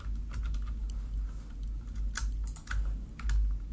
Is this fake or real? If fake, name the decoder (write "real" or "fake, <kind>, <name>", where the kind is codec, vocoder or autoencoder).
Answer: real